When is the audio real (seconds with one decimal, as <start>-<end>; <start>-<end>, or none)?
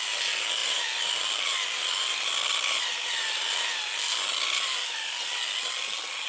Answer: 0.0-6.3